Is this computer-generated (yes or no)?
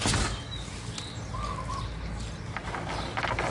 no